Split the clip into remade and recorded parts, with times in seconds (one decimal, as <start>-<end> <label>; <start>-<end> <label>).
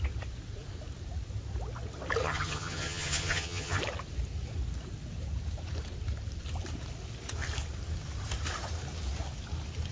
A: 0.0-2.2 recorded; 2.2-3.8 remade; 3.8-9.9 recorded